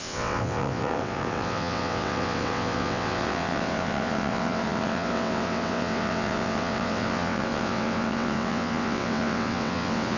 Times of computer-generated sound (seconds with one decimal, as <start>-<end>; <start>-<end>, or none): 0.0-10.2